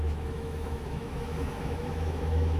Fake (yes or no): yes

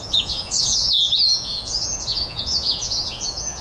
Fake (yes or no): yes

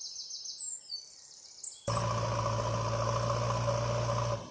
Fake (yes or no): no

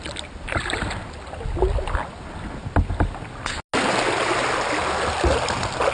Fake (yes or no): no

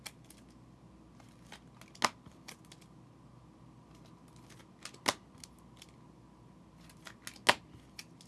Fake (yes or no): no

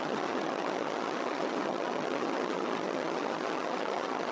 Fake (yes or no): yes